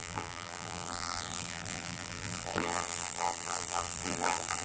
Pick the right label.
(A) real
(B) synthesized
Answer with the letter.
B